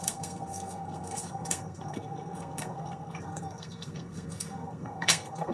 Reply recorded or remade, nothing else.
remade